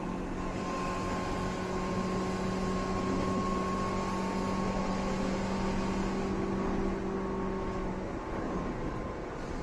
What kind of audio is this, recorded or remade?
recorded